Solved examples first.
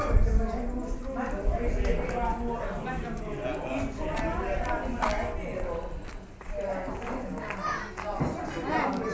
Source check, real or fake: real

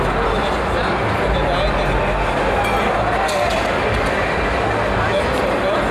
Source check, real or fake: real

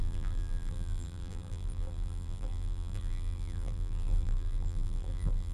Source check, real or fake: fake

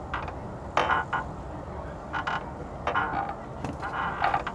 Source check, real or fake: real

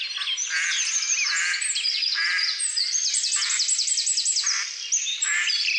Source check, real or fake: real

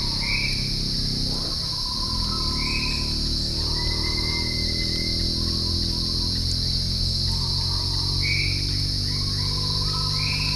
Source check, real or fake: real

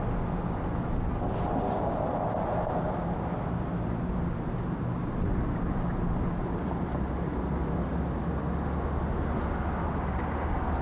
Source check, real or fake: real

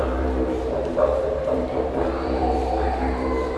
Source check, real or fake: fake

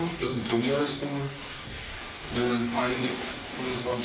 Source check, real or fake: fake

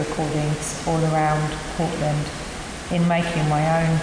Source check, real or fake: real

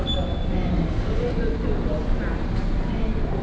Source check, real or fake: real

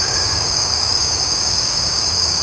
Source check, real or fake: fake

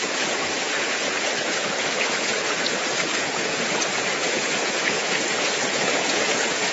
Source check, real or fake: fake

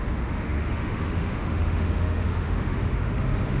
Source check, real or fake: fake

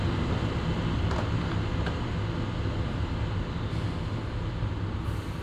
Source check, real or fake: real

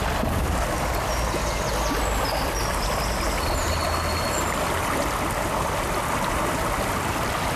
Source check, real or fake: real